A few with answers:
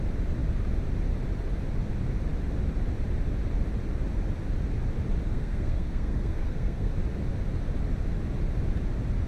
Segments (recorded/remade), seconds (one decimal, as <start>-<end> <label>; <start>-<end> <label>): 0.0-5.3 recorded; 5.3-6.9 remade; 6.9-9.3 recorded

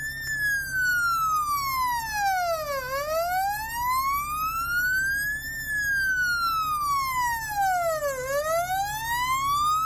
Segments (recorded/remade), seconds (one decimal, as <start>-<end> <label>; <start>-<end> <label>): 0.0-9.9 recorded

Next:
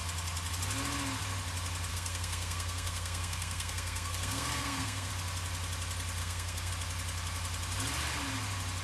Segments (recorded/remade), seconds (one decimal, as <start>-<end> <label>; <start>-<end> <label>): 0.0-1.9 recorded; 1.9-5.1 remade; 5.1-6.2 recorded; 6.2-6.7 remade; 6.7-8.8 recorded